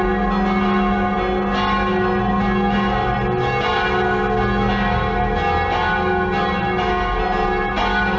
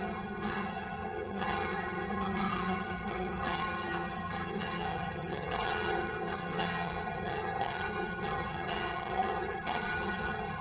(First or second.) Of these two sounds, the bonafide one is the first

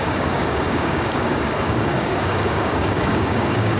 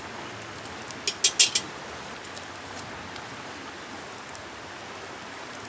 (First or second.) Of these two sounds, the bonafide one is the second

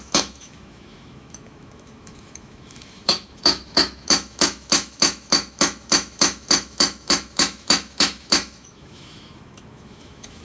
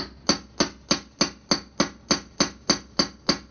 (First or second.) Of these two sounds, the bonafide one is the second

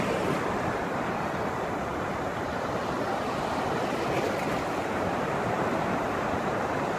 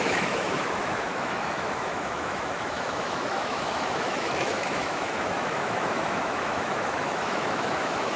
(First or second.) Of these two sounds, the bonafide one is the first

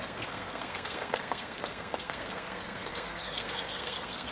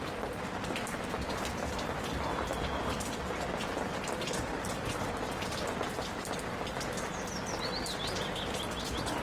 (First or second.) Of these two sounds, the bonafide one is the second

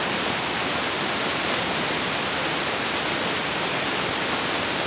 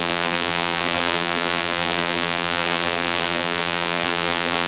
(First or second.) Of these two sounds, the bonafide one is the first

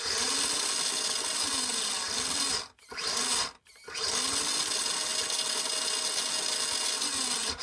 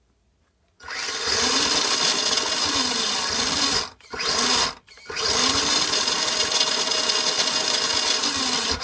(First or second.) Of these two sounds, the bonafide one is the first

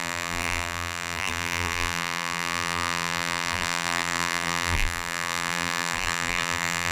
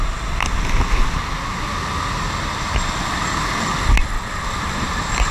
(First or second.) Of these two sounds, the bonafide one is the second